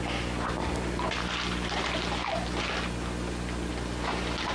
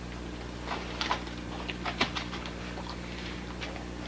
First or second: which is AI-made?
second